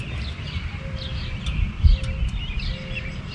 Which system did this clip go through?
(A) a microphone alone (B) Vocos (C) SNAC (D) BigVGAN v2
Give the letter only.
A